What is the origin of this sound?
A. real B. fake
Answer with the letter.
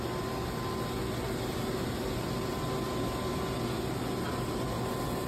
A